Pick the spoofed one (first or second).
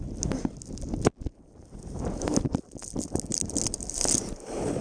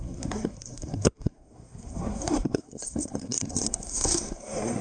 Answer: second